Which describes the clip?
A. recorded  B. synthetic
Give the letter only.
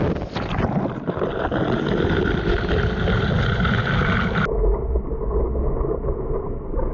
A